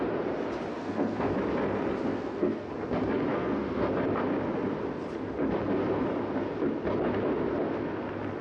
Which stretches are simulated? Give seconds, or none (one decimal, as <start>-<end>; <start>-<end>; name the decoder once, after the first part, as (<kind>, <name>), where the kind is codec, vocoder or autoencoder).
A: 0.7-1.3 (codec, SNAC); 2.1-2.7; 3.3-3.9